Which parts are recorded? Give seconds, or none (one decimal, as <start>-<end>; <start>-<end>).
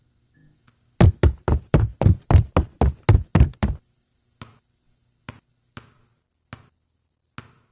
0.0-1.9; 2.8-7.7